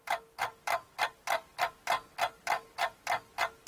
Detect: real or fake real